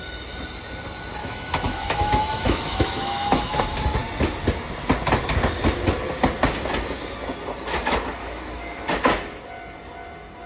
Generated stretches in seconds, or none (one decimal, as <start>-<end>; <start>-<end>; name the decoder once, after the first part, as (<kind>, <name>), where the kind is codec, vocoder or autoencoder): 1.2-3.6 (autoencoder, DAC-VAE); 8.2-8.9